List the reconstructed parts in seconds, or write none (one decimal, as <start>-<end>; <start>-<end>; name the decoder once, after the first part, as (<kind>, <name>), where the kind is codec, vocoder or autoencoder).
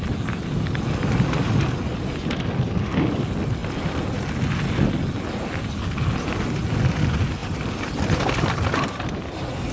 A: none